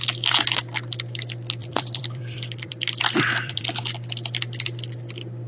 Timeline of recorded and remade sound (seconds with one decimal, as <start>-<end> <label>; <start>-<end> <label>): 0.0-1.6 recorded; 1.6-3.8 remade; 3.8-5.5 recorded